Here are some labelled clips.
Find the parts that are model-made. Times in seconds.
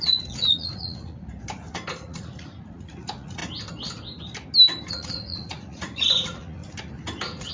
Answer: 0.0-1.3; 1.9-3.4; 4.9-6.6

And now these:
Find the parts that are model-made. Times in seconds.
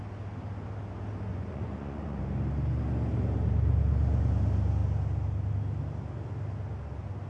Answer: 1.3-2.2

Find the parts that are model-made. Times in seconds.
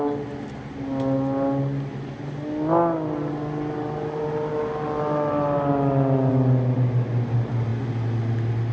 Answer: none